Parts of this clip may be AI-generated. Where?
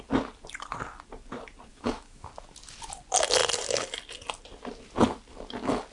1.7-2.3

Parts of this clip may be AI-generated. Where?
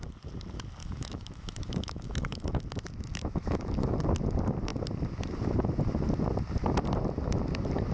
0.8-2.6; 3.1-4.0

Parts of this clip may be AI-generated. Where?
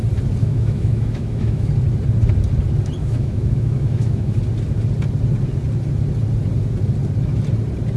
0.4-1.7; 3.0-4.4